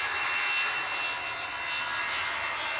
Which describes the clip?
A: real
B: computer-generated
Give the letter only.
A